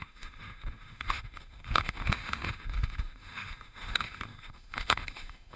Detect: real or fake fake